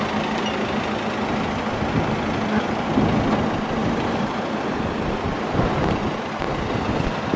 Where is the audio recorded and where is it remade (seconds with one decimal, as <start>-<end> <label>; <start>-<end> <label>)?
0.0-3.8 recorded; 3.8-6.3 remade; 6.3-7.4 recorded